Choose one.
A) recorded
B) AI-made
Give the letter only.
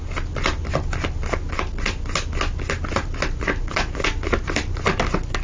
A